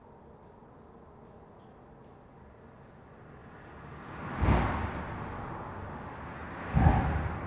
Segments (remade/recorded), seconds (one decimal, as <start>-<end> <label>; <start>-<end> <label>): 0.0-7.5 recorded